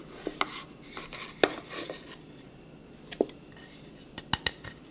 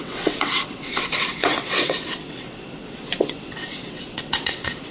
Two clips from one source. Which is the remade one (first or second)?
second